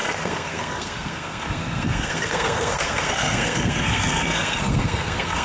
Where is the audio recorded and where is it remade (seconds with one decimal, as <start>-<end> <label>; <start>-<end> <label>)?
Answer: 0.0-5.4 remade